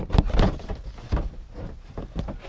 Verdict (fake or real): real